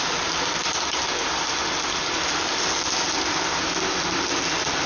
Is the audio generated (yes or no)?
no